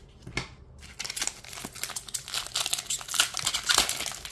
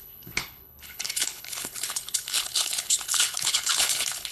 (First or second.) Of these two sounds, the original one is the first